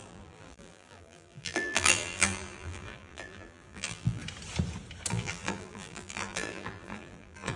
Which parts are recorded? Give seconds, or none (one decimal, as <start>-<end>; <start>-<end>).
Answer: 4.2-5.1